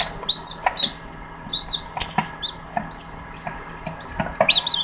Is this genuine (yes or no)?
yes